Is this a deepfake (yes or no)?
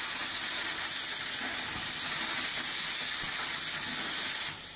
no